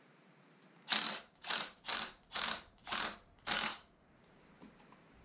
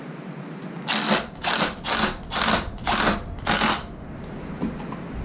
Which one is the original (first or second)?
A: second